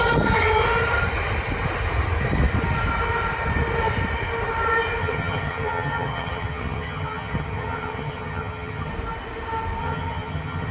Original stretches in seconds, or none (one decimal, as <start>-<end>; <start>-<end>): 0.0-5.0; 8.9-9.8